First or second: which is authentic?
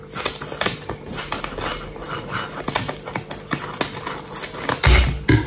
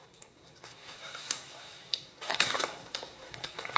first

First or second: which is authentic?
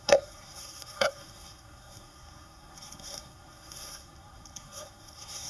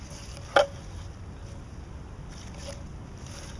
second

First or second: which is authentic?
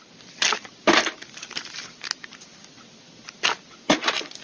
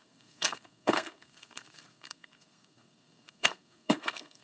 first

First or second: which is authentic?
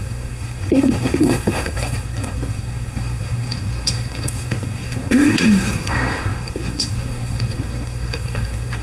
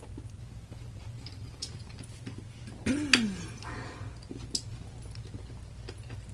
second